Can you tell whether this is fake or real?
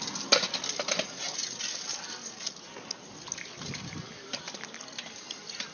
real